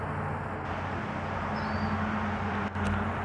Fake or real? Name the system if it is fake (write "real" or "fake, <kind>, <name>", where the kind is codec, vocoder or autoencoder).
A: real